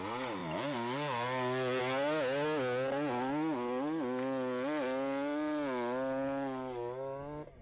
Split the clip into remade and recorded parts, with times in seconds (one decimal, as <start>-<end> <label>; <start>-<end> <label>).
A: 0.0-7.6 recorded